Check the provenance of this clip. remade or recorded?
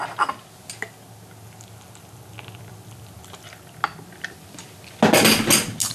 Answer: recorded